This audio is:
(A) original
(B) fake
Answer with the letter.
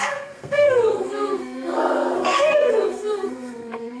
B